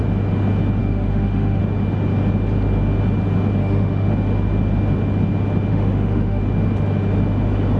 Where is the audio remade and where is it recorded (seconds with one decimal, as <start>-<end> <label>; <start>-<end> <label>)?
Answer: 0.0-0.8 recorded; 0.8-1.6 remade; 1.6-3.6 recorded; 3.6-4.1 remade; 4.1-5.7 recorded; 5.7-6.4 remade; 6.4-7.8 recorded